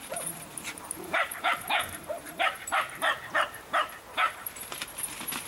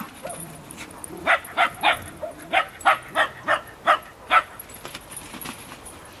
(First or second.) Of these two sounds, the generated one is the first